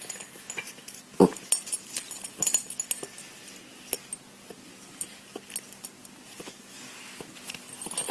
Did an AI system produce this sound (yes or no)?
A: no